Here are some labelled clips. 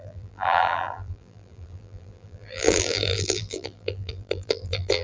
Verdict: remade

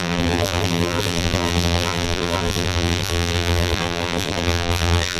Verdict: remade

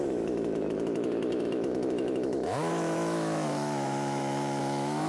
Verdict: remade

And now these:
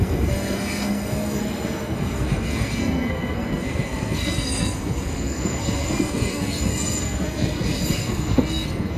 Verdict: remade